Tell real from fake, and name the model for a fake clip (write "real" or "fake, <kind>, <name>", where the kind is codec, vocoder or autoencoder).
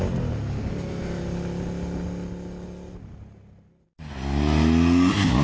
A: real